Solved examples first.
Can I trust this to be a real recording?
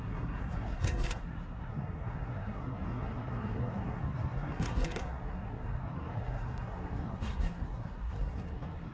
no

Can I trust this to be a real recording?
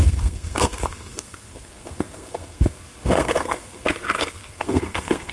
no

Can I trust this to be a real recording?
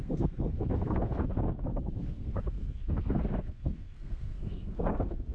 no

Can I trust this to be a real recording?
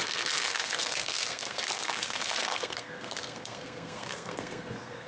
no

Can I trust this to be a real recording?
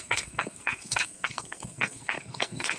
no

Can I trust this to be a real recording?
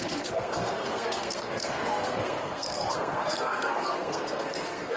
no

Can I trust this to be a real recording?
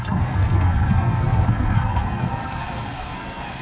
no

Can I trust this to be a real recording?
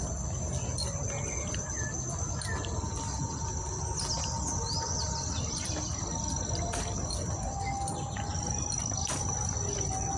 yes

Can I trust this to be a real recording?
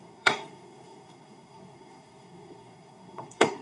no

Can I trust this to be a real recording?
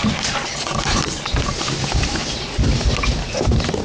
yes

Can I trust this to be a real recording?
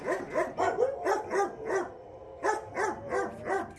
yes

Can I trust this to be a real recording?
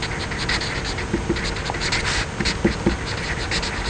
yes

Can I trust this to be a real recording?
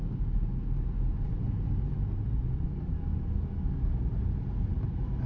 yes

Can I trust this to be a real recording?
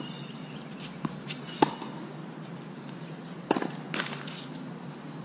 yes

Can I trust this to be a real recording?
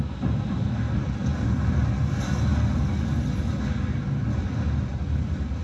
yes